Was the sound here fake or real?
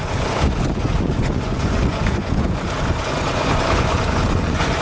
fake